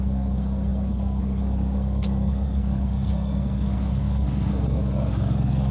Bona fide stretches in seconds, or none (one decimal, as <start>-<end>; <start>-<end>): none